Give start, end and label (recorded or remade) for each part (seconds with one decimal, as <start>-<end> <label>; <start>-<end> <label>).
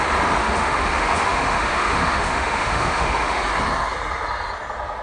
0.0-0.4 recorded; 0.4-3.4 remade; 3.4-5.0 recorded